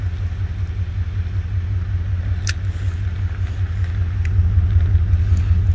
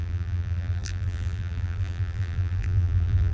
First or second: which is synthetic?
second